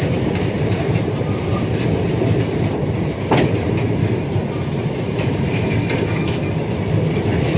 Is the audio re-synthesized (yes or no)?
no